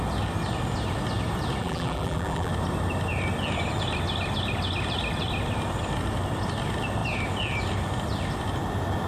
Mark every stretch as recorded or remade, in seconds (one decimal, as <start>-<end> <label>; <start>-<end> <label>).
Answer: 0.0-1.6 recorded; 1.6-2.5 remade; 2.5-9.1 recorded